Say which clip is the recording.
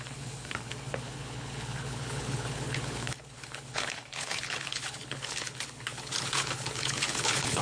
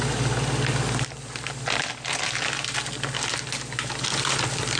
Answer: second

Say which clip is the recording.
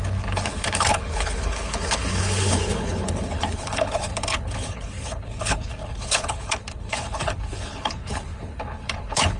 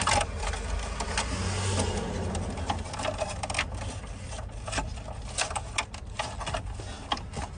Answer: second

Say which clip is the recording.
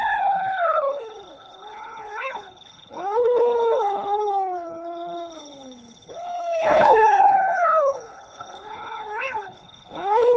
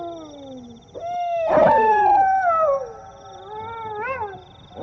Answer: second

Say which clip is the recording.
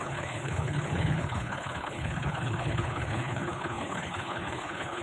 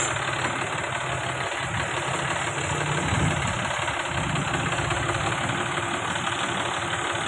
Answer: second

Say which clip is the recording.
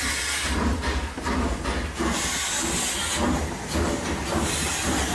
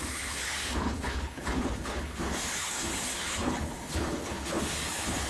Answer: first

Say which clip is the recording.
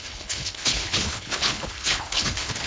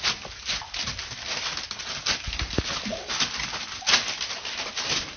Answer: second